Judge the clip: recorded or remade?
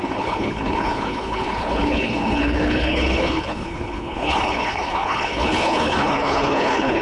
remade